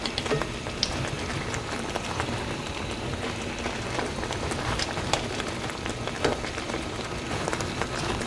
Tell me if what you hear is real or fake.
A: fake